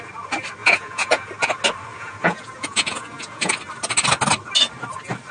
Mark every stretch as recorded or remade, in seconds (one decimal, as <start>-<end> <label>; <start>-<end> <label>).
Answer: 0.0-0.6 recorded; 0.6-1.3 remade; 1.3-1.9 recorded; 1.9-3.5 remade; 3.5-5.3 recorded

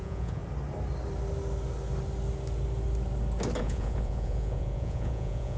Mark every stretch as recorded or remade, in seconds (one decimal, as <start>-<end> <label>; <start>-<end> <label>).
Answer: 0.0-0.4 remade; 0.4-3.6 recorded; 3.6-5.6 remade